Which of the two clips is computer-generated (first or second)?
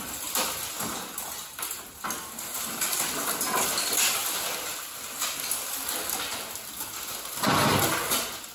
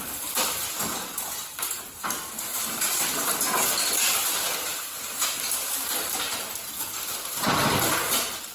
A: second